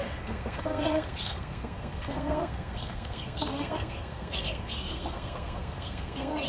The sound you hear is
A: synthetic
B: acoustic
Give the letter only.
A